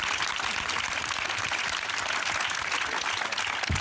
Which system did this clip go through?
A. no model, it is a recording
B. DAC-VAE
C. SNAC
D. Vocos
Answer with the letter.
A